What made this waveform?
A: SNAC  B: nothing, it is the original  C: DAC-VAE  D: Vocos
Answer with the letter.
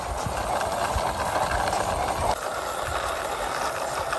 B